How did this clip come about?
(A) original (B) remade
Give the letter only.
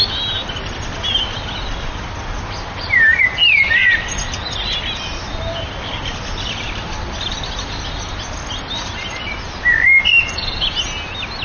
A